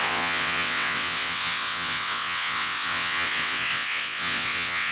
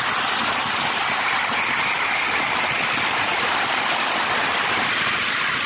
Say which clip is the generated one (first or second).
first